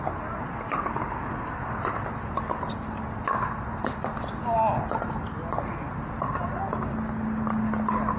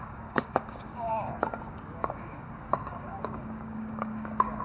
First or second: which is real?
first